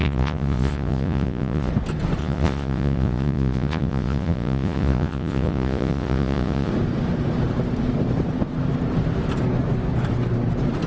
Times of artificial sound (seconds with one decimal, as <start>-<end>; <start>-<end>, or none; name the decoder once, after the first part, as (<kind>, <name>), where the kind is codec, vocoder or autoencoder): 0.0-1.7 (vocoder, Vocos); 2.2-6.7